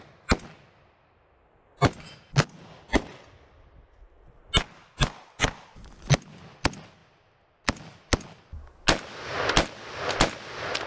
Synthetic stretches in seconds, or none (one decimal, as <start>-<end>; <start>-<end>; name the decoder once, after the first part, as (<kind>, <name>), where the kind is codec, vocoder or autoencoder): none